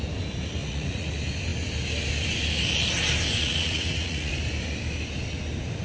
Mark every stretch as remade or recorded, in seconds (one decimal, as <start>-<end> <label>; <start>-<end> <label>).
0.0-0.6 recorded; 0.6-1.1 remade; 1.1-3.4 recorded; 3.4-4.3 remade; 4.3-5.8 recorded

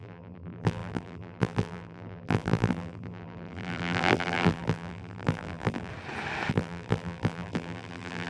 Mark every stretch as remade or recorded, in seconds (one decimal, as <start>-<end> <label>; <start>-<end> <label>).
0.0-5.9 remade; 5.9-6.5 recorded; 6.5-8.3 remade

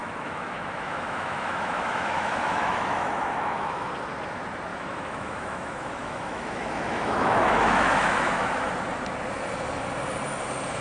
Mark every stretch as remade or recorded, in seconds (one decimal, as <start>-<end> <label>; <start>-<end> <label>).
0.0-3.9 remade; 3.9-4.7 recorded; 4.7-8.7 remade; 8.7-10.8 recorded

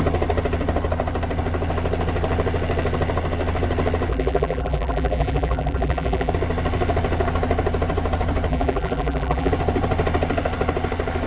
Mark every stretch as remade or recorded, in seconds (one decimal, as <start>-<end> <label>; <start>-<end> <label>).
0.0-4.1 recorded; 4.1-6.3 remade; 6.3-8.5 recorded; 8.5-9.5 remade; 9.5-11.3 recorded

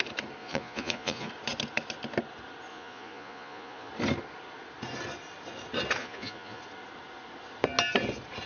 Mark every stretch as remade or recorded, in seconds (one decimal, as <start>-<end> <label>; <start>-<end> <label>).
0.0-0.4 recorded; 0.4-1.3 remade; 1.3-2.7 recorded; 2.7-3.9 remade; 3.9-6.0 recorded; 6.0-6.6 remade; 6.6-8.5 recorded